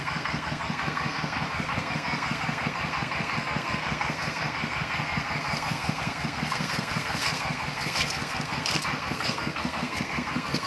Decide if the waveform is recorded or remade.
remade